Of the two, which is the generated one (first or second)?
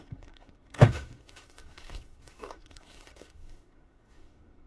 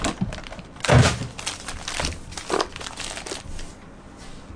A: first